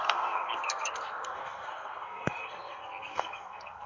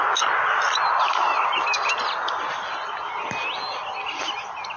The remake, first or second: first